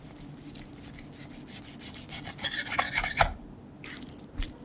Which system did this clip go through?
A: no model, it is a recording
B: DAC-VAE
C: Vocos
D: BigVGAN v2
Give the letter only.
A